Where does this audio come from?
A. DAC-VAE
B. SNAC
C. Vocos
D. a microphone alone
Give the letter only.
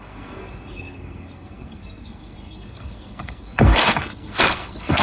B